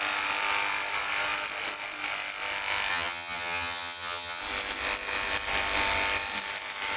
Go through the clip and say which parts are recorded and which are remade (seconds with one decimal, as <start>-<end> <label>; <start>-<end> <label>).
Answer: 0.0-2.9 recorded; 2.9-4.4 remade; 4.4-7.0 recorded